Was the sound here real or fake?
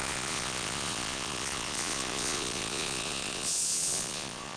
fake